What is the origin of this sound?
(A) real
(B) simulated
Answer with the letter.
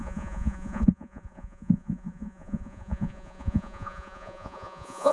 B